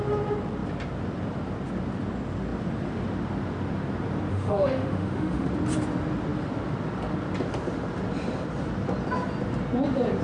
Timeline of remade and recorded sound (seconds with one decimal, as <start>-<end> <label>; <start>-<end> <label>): 0.0-4.3 recorded; 4.3-5.5 remade; 5.5-10.2 recorded